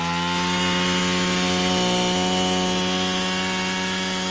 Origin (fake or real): real